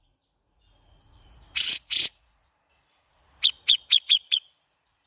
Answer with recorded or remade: remade